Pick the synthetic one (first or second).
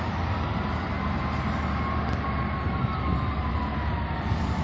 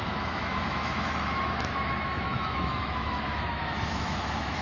second